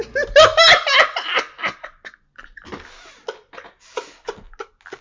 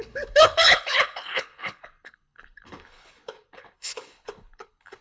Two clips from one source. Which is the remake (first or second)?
second